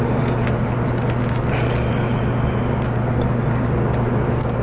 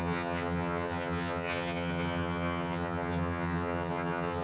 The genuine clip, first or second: first